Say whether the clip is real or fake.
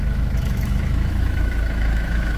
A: fake